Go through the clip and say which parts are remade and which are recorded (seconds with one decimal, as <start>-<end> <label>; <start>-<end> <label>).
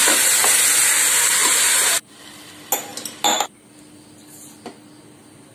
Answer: 0.0-1.4 recorded; 1.4-2.2 remade; 2.2-5.5 recorded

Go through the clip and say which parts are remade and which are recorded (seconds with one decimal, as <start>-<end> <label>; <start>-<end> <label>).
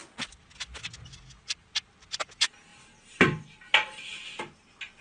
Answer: 0.0-2.7 recorded; 2.7-4.2 remade; 4.2-5.0 recorded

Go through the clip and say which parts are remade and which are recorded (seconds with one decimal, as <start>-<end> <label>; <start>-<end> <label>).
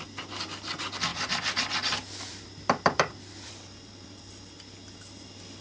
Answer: 0.0-1.1 recorded; 1.1-4.5 remade; 4.5-5.6 recorded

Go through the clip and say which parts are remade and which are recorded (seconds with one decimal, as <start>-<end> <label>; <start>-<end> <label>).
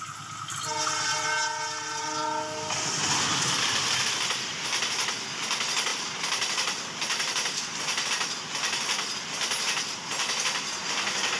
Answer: 0.0-5.9 recorded; 5.9-8.1 remade; 8.1-11.4 recorded